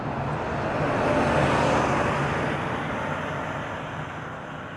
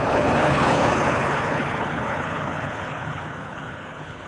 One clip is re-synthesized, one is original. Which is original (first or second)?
first